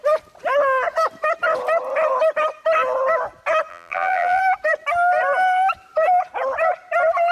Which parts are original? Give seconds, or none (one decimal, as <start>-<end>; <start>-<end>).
0.0-3.7; 4.4-7.3